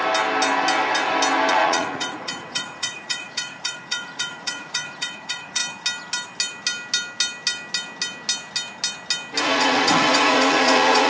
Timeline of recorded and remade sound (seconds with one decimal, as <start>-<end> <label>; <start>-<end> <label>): 0.0-1.5 recorded; 1.5-5.6 remade; 5.6-9.4 recorded; 9.4-11.1 remade